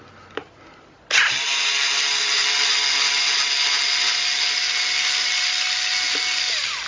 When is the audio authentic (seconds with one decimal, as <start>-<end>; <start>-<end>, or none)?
0.0-6.9